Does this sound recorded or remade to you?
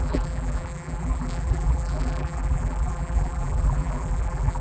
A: remade